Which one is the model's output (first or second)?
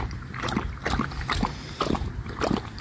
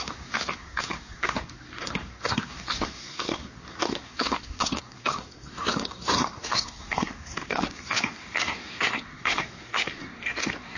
second